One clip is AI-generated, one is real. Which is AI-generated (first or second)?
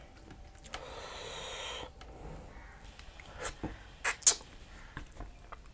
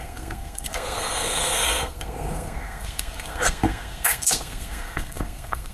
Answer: second